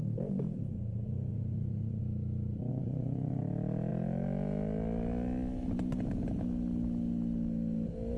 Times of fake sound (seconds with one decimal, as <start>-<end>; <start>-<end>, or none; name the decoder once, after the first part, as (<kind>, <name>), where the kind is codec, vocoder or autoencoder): 1.3-2.0 (vocoder, Vocos); 2.7-3.4